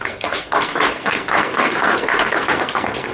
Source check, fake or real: fake